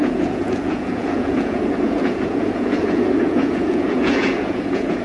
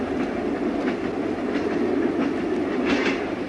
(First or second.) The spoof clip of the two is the first